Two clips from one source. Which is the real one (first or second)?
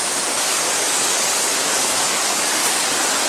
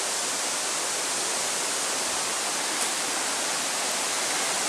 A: second